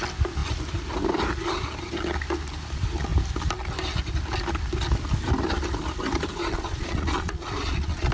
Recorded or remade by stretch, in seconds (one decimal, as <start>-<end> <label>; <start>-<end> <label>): 0.0-6.4 recorded; 6.4-8.1 remade